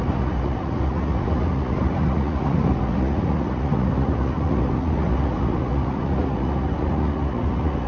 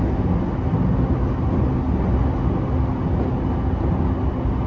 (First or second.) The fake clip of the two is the first